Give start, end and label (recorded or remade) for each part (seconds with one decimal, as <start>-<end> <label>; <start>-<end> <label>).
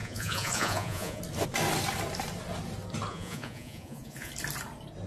0.0-1.2 remade; 1.2-3.1 recorded; 3.1-4.3 remade; 4.3-5.1 recorded